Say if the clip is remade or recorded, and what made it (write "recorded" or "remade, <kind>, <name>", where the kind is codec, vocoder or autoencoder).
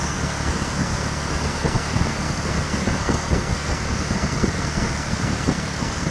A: remade, codec, SNAC